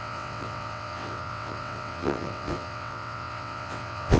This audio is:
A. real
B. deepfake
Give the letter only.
B